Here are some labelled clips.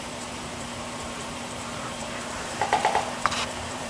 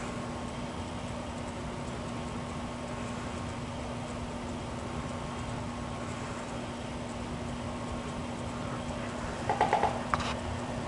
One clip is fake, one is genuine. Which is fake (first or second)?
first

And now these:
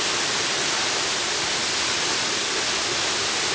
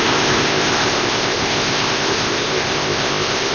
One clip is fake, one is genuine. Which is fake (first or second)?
second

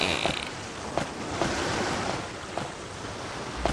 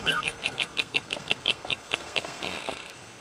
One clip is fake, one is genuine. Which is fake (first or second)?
second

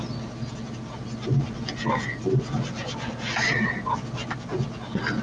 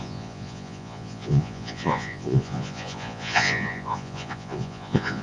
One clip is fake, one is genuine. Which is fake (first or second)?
second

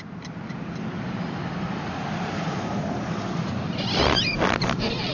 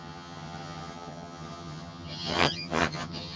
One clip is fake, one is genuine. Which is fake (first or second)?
second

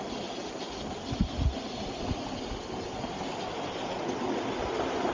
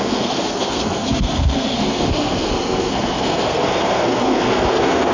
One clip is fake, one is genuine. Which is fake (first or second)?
second